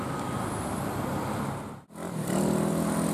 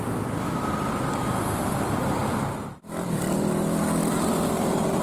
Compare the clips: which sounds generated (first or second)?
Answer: second